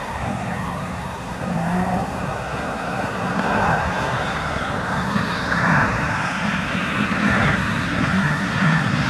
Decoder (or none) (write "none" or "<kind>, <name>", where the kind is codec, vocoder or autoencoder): codec, SNAC